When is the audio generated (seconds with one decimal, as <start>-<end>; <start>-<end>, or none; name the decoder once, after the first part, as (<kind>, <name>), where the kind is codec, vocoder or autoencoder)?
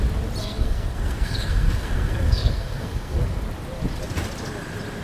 0.4-3.4 (codec, SNAC)